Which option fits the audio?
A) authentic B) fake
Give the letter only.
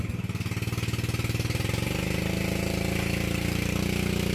A